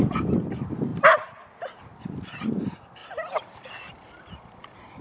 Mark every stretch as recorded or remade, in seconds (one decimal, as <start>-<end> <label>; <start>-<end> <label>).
0.0-3.0 recorded; 3.0-5.0 remade